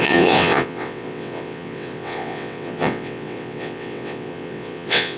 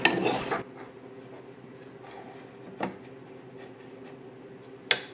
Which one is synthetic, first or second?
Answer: first